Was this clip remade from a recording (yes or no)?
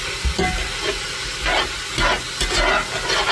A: no